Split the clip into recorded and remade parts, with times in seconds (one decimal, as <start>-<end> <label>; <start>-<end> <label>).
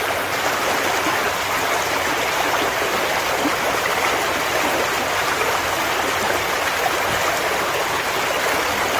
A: 0.0-9.0 recorded